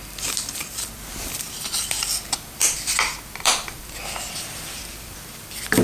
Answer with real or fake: fake